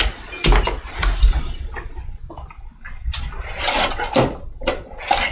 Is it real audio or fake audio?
real